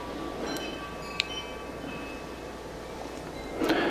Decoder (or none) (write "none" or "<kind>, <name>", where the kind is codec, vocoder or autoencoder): none